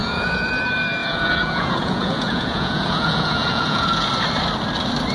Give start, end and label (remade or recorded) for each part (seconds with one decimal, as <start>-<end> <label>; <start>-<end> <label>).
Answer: 0.0-0.5 remade; 0.5-1.0 recorded; 1.0-4.1 remade; 4.1-5.1 recorded